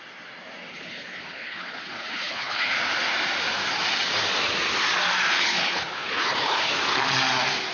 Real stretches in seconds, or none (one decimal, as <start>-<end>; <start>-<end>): 0.0-0.7; 2.8-5.3; 6.7-7.7